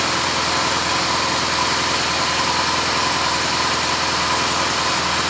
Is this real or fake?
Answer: real